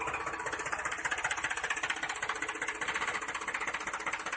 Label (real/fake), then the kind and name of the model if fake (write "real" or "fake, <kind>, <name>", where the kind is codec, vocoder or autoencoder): real